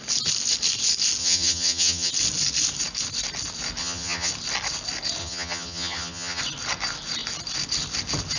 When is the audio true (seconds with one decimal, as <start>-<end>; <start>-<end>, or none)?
0.0-1.2; 2.1-3.8; 4.3-5.2; 6.4-8.4